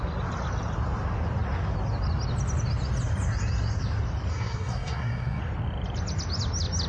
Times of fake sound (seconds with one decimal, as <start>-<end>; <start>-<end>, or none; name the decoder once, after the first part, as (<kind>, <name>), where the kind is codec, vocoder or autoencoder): 4.3-5.4 (codec, SNAC)